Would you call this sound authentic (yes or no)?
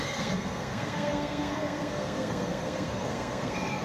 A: no